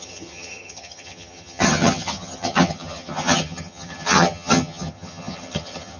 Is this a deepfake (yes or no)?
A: yes